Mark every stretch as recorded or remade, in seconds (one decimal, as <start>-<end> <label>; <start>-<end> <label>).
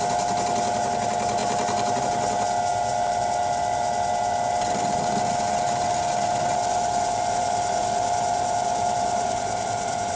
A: 0.0-10.2 recorded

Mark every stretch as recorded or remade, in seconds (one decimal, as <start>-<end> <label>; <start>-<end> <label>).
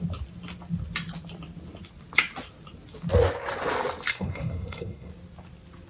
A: 0.0-4.1 recorded; 4.1-5.1 remade; 5.1-5.9 recorded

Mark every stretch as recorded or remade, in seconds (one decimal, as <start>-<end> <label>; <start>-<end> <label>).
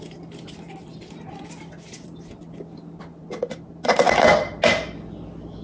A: 0.0-5.6 recorded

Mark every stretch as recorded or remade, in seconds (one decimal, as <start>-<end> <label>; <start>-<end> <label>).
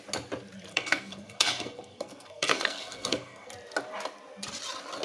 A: 0.0-0.7 recorded; 0.7-3.5 remade; 3.5-5.0 recorded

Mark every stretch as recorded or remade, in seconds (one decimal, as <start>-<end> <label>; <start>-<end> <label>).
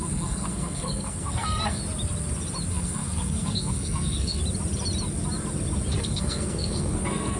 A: 0.0-1.8 remade; 1.8-2.7 recorded; 2.7-4.4 remade; 4.4-6.0 recorded; 6.0-7.4 remade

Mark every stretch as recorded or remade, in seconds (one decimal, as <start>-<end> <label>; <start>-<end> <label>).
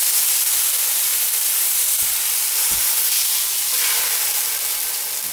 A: 0.0-5.3 recorded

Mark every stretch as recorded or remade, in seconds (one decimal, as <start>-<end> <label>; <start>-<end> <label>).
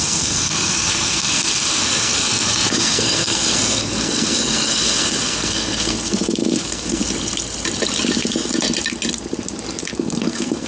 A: 0.0-7.0 remade; 7.0-9.8 recorded; 9.8-10.7 remade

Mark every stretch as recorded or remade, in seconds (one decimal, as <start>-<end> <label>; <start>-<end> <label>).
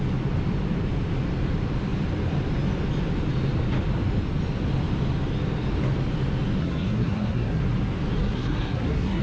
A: 0.0-6.6 recorded; 6.6-7.6 remade; 7.6-8.2 recorded; 8.2-9.2 remade